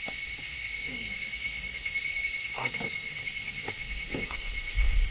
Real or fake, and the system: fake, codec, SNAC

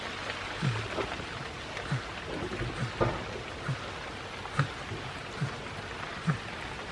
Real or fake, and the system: real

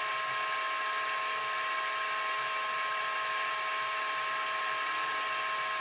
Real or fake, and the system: real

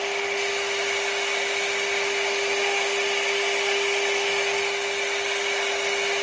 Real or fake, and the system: real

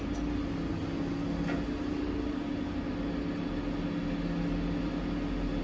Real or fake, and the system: real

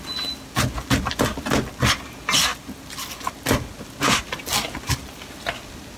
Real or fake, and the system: real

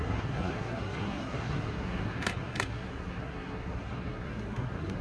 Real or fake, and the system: fake, codec, SNAC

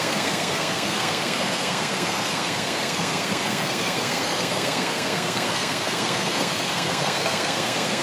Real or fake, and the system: fake, codec, SNAC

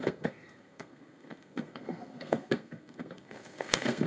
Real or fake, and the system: fake, codec, SNAC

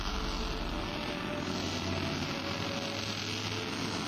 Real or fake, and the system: real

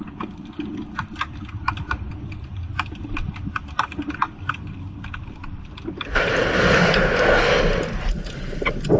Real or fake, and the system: real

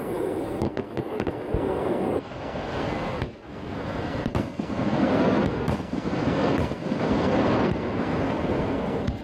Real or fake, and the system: fake, codec, SNAC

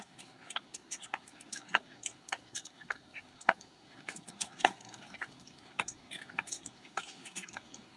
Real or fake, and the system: fake, codec, SNAC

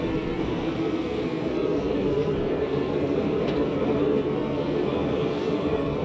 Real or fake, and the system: fake, codec, SNAC